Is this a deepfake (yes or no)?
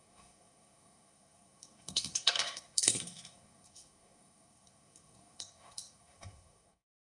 yes